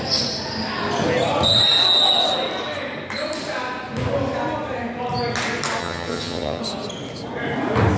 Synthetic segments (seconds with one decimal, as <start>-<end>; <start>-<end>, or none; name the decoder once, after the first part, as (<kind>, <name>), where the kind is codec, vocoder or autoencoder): 5.8-6.6 (vocoder, HiFi-GAN)